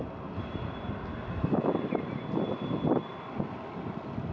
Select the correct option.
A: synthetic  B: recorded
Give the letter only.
B